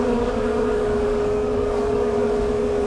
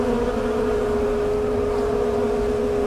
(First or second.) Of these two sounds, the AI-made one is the first